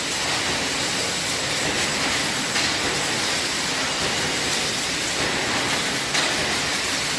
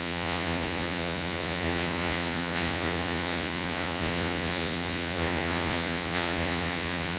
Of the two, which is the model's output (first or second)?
second